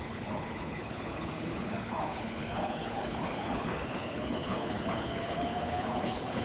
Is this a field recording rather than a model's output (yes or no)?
no